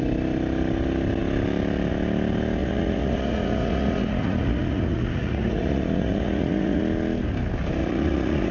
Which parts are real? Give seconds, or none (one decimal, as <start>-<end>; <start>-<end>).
0.0-2.6; 6.8-7.8